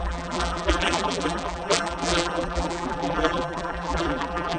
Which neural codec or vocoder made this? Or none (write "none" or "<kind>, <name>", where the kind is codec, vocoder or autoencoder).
vocoder, BigVGAN v2